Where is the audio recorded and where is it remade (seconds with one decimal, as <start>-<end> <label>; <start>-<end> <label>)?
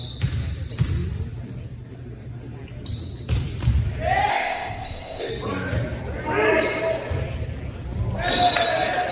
0.0-4.3 recorded; 4.3-5.3 remade; 5.3-9.1 recorded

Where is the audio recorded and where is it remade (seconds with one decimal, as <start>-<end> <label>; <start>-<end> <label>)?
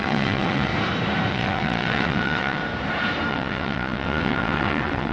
0.0-0.7 remade; 0.7-1.3 recorded; 1.3-2.6 remade; 2.6-3.3 recorded; 3.3-5.1 remade